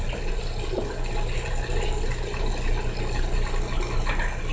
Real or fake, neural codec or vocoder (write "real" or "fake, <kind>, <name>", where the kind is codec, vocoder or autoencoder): real